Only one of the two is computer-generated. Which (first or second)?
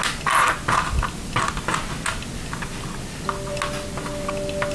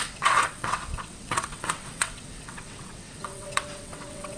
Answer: second